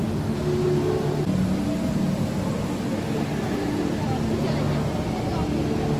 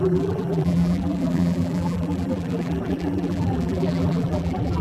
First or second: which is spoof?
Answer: second